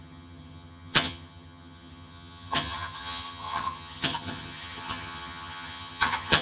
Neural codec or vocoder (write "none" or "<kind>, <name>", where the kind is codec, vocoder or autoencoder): vocoder, HiFi-GAN